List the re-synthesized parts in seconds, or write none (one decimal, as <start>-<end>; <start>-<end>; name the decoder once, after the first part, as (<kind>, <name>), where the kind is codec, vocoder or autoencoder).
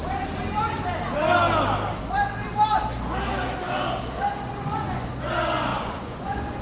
4.5-5.1 (vocoder, Vocos); 5.7-6.6